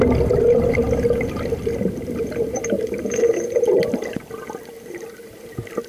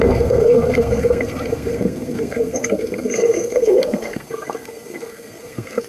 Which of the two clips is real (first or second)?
first